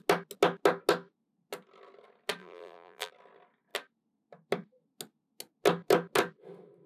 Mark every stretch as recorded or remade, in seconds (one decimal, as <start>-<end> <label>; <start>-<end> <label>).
0.0-2.4 recorded; 2.4-3.1 remade; 3.1-6.9 recorded